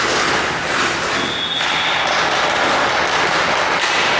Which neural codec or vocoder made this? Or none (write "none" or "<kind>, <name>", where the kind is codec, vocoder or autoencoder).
none